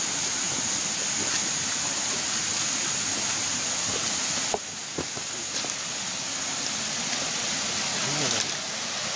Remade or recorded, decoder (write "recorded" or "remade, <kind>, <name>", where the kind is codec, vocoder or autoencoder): recorded